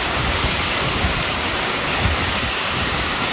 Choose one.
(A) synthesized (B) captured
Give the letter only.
A